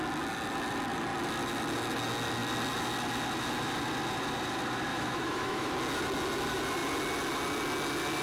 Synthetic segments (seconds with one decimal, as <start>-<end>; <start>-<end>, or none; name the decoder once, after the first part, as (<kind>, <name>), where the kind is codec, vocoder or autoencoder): 4.9-5.7 (autoencoder, DAC-VAE)